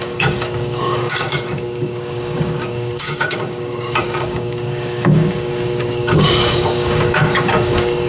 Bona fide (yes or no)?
no